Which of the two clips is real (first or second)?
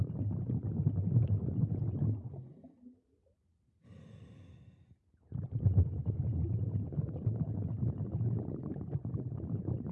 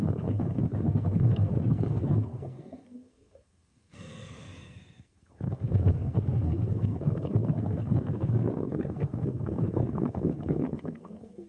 first